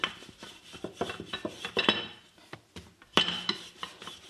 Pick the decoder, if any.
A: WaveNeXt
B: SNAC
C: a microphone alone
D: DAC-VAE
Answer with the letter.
C